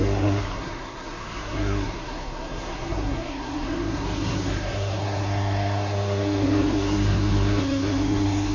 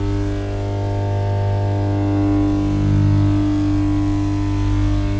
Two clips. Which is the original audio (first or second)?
second